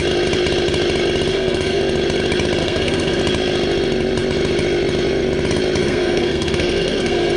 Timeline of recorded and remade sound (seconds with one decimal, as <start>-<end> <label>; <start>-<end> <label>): 0.0-1.3 recorded; 1.3-1.8 remade; 1.8-2.6 recorded; 2.6-3.2 remade; 3.2-5.8 recorded; 5.8-7.4 remade